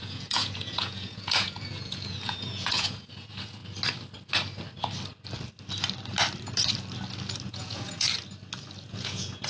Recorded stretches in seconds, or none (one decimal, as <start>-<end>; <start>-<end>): 3.6-7.5; 8.1-8.9